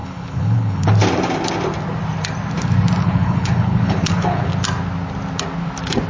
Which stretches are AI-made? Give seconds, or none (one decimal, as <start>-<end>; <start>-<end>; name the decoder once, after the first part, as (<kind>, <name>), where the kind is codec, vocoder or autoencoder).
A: 0.0-0.9 (codec, HILCodec); 3.0-4.5